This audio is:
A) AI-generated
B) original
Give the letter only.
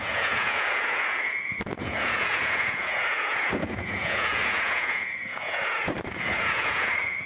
A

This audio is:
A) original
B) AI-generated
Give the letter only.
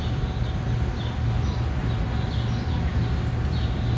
A